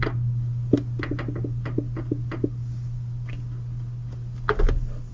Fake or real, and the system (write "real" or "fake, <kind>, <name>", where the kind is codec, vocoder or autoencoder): real